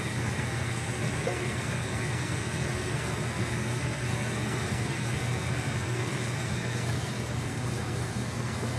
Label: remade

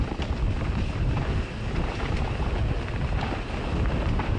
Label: recorded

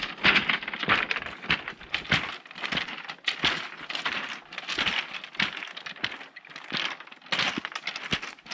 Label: recorded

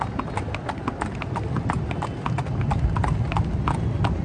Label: recorded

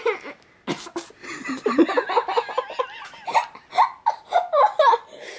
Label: recorded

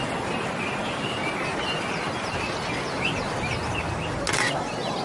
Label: recorded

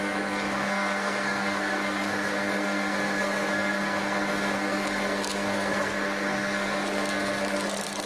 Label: remade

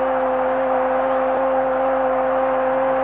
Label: recorded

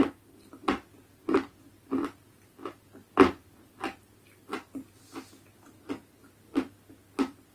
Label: recorded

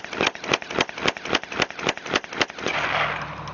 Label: recorded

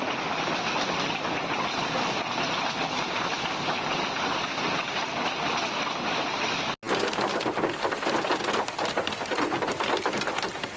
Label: recorded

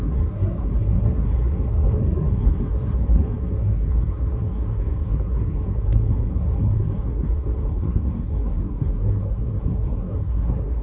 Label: remade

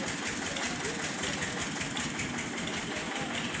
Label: recorded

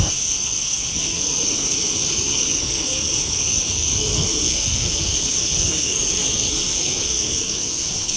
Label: remade